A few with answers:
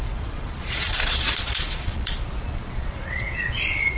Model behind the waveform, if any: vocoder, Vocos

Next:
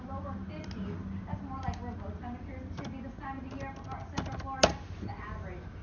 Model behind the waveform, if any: none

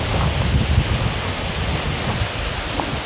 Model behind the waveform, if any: none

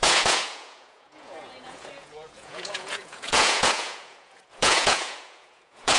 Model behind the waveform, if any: vocoder, Vocos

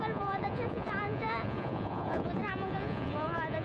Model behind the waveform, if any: vocoder, Vocos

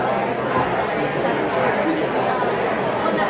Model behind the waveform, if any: none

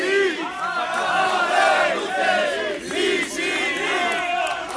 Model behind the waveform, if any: none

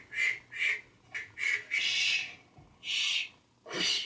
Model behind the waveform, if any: none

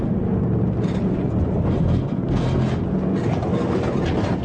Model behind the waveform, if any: none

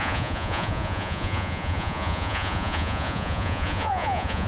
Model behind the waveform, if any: vocoder, Vocos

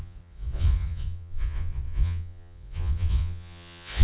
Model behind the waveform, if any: vocoder, Vocos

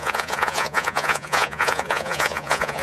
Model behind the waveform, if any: vocoder, Vocos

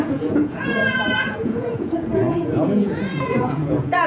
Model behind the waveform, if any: vocoder, Vocos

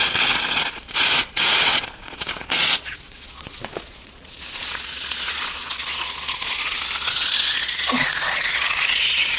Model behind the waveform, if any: vocoder, Vocos